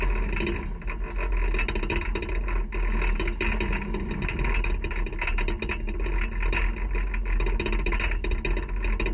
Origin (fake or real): real